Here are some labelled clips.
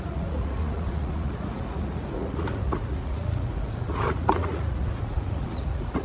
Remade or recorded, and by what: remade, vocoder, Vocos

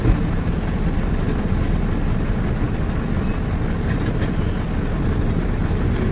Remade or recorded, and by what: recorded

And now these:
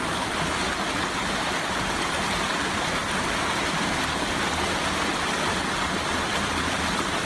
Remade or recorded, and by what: recorded